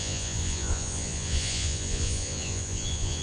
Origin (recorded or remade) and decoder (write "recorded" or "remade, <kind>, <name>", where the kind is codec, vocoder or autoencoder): remade, vocoder, Vocos